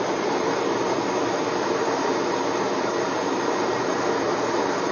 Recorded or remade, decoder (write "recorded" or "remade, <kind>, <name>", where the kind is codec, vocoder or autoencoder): remade, vocoder, BigVGAN v2